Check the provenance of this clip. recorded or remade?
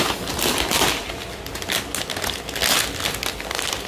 recorded